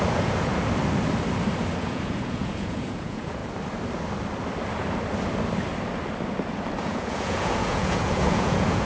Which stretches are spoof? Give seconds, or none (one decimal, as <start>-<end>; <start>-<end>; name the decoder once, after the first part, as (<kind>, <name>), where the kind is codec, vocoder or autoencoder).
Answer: 0.0-0.5 (vocoder, Vocos); 1.8-3.4; 6.8-8.8